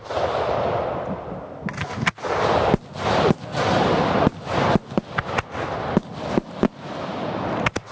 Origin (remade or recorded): recorded